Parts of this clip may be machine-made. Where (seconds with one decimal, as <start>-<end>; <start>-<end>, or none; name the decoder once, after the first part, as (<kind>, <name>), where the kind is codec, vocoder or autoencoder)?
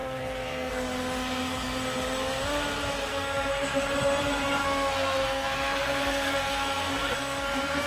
0.0-0.7 (codec, SNAC); 3.1-3.8; 4.6-7.9